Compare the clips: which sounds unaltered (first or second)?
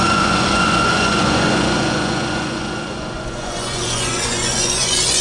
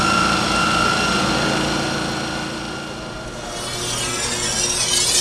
second